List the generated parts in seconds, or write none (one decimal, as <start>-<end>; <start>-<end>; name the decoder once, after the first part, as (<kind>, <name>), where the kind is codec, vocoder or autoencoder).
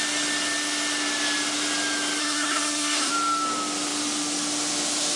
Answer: 2.2-3.1 (codec, SNAC)